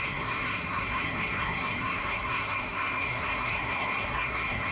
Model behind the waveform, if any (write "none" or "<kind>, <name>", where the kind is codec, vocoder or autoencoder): codec, SNAC